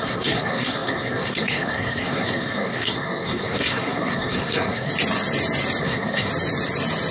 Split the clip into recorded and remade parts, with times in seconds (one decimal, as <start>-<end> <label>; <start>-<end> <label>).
0.0-4.9 remade; 4.9-5.8 recorded; 5.8-6.3 remade; 6.3-7.1 recorded

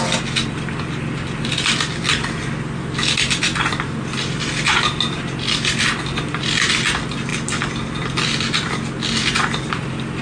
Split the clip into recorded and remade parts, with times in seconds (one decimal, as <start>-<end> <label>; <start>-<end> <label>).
0.0-10.2 recorded

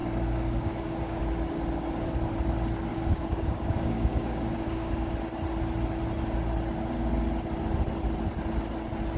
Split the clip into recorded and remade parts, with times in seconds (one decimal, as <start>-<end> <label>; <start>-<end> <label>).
0.0-1.2 remade; 1.2-2.9 recorded; 2.9-5.1 remade; 5.1-9.2 recorded

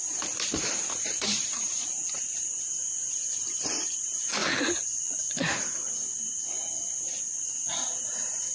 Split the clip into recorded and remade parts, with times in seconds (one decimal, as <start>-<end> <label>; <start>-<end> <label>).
0.0-4.4 remade; 4.4-8.0 recorded; 8.0-8.5 remade

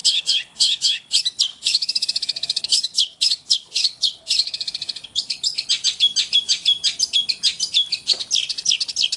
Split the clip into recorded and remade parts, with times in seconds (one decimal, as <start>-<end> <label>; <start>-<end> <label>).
0.0-1.1 remade; 1.1-1.5 recorded; 1.5-5.7 remade; 5.7-9.2 recorded

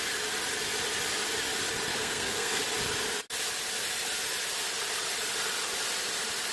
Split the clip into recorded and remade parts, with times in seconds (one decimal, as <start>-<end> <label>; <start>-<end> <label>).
0.0-1.9 recorded; 1.9-2.6 remade; 2.6-6.5 recorded

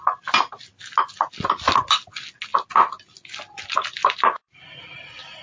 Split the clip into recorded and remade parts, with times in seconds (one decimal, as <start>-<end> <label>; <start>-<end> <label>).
0.0-4.0 recorded; 4.0-4.6 remade; 4.6-5.4 recorded

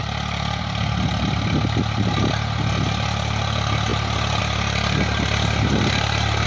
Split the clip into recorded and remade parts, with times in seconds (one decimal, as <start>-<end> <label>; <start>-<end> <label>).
0.0-6.5 recorded